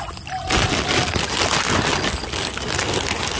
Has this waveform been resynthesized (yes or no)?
no